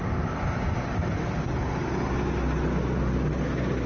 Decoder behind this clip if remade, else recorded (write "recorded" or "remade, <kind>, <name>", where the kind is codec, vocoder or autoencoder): recorded